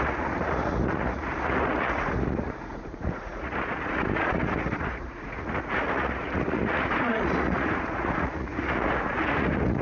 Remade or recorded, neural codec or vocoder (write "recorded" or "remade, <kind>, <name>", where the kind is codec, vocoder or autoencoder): remade, vocoder, Vocos